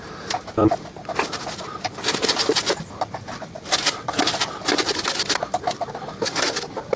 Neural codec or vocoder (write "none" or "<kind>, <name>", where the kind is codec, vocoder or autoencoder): none